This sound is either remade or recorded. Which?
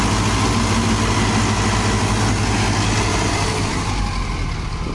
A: recorded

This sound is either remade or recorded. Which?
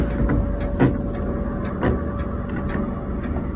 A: recorded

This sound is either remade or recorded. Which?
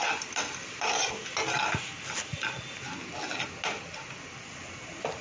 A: recorded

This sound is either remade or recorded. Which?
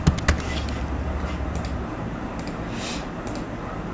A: recorded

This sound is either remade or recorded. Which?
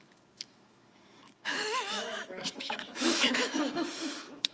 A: remade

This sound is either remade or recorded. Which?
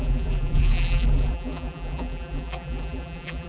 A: remade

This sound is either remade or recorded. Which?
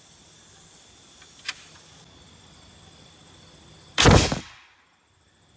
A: recorded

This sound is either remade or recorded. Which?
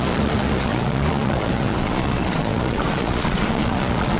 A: remade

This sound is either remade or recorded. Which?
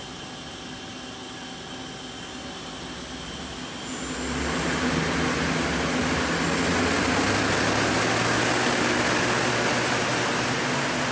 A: recorded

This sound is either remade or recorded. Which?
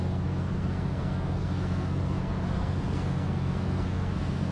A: remade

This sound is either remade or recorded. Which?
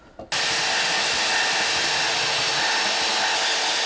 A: recorded